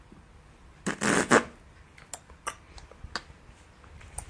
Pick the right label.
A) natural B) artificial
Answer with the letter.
A